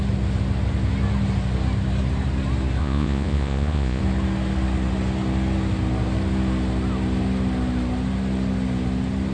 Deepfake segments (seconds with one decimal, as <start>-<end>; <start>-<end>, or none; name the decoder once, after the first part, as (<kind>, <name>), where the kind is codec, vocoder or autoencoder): 2.8-4.0 (vocoder, Vocos)